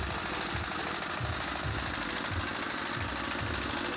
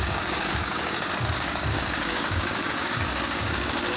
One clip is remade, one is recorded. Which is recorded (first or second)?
first